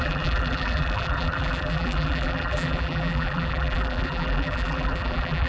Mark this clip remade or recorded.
remade